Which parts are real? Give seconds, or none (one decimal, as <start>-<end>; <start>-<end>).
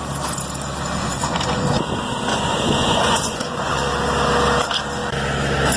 0.0-1.0; 1.8-2.3; 3.9-5.8